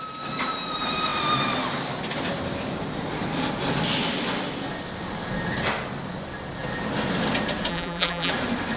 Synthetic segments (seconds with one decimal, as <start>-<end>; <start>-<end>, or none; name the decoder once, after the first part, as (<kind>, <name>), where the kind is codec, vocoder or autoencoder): 7.7-8.3 (vocoder, BigVGAN v2)